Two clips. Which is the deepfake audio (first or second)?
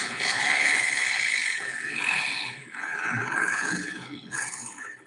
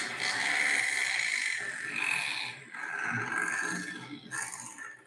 first